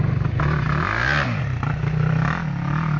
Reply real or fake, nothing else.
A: real